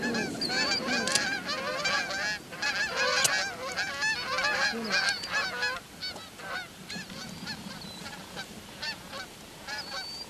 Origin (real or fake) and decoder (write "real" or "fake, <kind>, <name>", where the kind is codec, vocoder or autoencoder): real